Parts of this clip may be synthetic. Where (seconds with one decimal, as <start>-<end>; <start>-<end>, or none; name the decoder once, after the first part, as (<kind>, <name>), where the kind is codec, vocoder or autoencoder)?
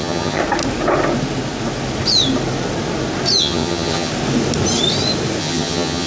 0.0-0.4 (vocoder, HiFi-GAN); 3.4-4.1; 5.4-6.1